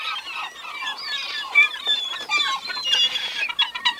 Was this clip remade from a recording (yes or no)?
no